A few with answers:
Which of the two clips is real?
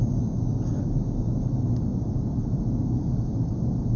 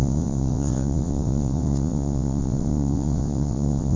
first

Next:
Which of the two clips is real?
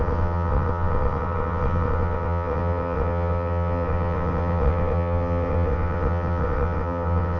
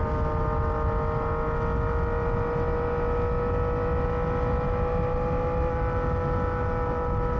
second